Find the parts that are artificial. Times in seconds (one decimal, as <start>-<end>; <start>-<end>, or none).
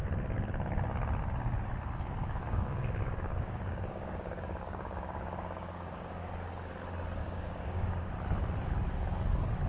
2.2-6.3; 7.2-8.1